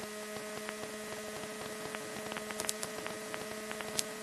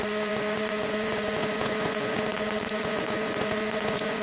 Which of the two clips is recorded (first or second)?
first